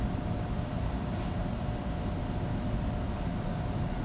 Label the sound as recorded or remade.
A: recorded